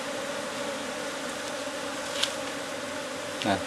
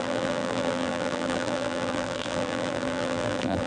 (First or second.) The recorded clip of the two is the first